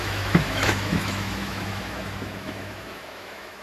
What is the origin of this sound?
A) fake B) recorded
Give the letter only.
A